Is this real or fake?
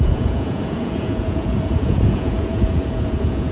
fake